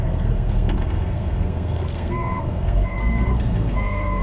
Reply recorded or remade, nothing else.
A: remade